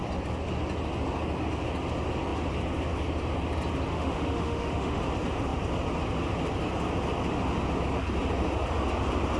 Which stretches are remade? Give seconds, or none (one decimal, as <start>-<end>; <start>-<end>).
3.9-5.0